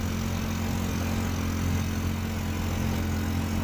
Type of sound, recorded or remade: recorded